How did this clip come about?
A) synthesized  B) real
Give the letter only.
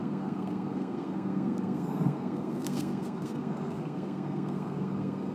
A